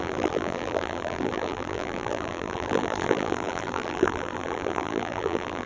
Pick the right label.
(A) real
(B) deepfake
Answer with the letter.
B